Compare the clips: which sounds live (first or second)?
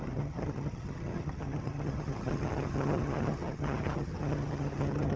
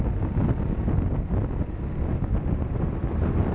second